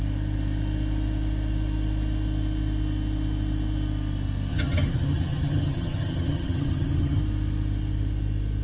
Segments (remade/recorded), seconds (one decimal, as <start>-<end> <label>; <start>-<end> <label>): 0.0-4.5 recorded; 4.5-7.2 remade; 7.2-8.6 recorded